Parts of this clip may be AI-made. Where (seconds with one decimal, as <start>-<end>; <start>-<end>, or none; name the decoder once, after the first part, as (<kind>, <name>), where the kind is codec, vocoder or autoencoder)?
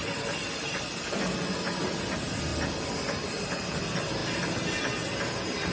0.0-1.6 (vocoder, BigVGAN v2)